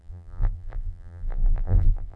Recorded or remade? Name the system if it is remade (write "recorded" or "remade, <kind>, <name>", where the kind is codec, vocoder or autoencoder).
remade, vocoder, BigVGAN v2